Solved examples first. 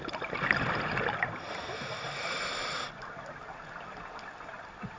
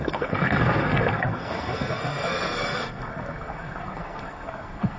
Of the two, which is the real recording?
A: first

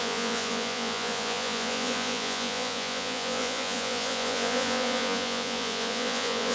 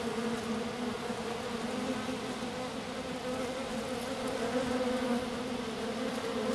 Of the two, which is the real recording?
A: second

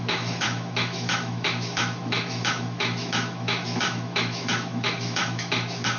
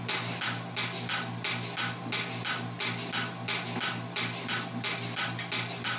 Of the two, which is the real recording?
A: second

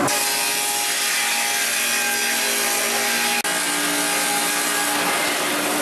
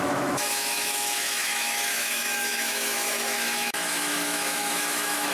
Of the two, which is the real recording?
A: first